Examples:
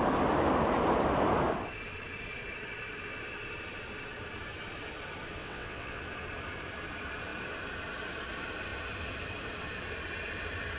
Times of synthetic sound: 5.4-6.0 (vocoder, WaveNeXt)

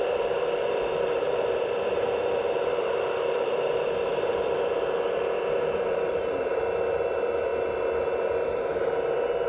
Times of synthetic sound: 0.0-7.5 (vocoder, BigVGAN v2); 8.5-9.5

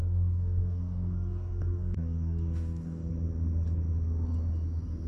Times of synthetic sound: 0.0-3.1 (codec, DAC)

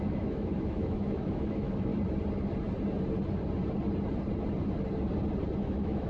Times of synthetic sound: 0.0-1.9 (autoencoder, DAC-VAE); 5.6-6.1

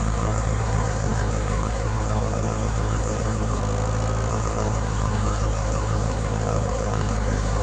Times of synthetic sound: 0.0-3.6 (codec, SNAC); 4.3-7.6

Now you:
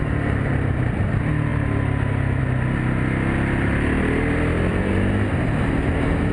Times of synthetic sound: 4.7-5.3 (vocoder, BigVGAN v2)